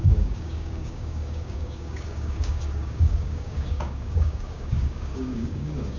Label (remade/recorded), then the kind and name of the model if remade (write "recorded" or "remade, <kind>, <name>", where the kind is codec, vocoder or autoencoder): remade, codec, DAC